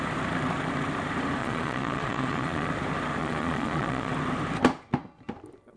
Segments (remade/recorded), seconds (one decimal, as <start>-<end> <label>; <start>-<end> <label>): 0.0-1.4 recorded; 1.4-2.7 remade; 2.7-3.2 recorded; 3.2-4.1 remade; 4.1-5.8 recorded